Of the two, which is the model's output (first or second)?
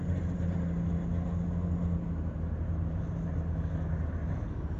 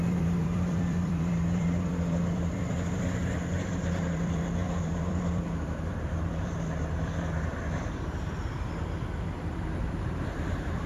second